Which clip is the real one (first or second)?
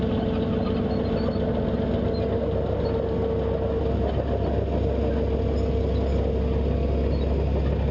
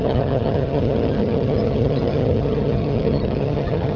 first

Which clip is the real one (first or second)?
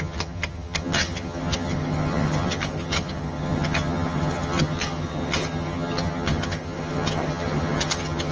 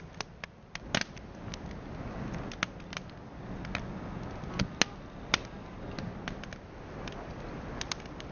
second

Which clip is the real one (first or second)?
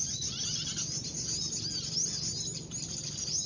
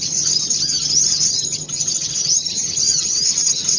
first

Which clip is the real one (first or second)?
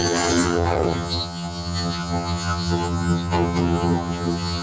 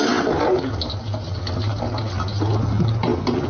second